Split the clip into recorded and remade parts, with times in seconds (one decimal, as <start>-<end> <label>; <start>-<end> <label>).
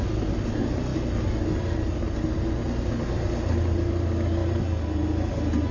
0.0-5.7 recorded